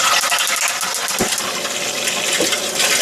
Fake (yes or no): no